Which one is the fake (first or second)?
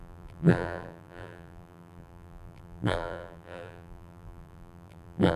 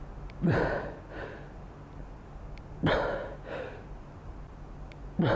first